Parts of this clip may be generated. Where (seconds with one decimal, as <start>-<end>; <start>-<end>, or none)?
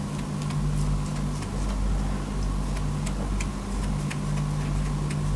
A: none